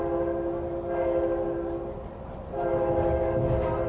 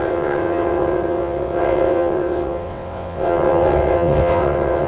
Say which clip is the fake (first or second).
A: second